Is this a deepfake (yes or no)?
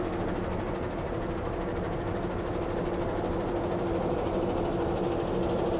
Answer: no